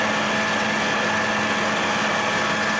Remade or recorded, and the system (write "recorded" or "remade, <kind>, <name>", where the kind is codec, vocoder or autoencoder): recorded